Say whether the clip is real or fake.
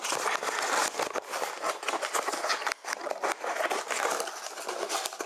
real